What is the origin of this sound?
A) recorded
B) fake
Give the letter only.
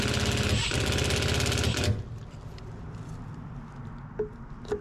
A